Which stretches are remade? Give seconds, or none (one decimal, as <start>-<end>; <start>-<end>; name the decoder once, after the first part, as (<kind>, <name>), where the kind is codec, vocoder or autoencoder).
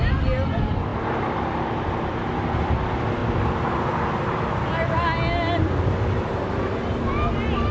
none